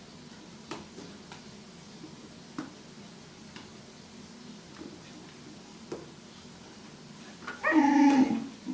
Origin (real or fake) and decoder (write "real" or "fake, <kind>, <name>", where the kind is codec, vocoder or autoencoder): real